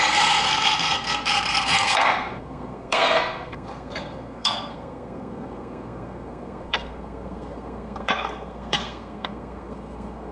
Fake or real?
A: fake